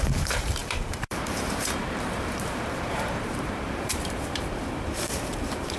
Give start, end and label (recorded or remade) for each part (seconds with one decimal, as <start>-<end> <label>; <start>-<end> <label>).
0.0-5.8 remade